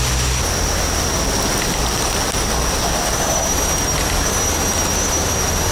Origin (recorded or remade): recorded